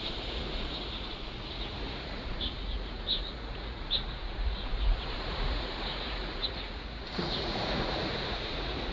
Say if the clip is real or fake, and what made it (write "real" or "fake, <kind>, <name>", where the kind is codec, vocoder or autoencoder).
fake, vocoder, Vocos